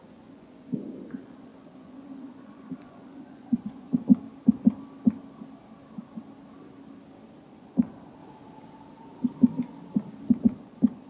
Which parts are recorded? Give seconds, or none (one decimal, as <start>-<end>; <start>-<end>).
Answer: 4.1-7.5; 8.2-10.3